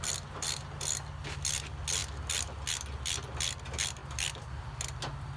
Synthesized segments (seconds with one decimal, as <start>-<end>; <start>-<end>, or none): 4.0-4.6